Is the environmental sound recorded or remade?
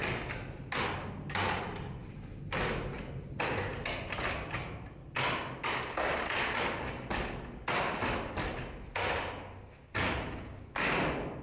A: recorded